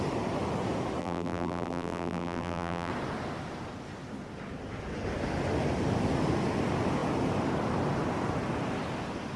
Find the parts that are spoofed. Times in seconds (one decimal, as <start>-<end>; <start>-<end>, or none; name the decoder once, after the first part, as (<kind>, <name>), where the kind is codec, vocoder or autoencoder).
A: 1.0-2.9 (vocoder, BigVGAN v2)